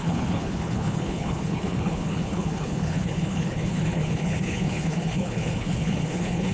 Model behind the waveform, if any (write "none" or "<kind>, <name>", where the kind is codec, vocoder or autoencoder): codec, HILCodec